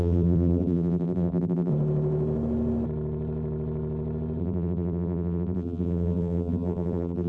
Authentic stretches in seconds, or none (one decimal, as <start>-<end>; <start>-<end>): 1.7-4.4